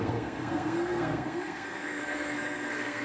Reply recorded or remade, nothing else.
remade